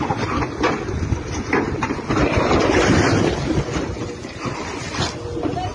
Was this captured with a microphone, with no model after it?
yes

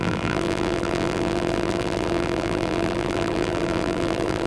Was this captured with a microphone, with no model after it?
no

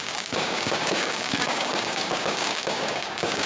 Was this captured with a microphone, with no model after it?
no